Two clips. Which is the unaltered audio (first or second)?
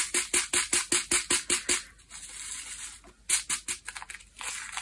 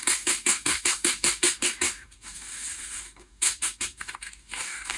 first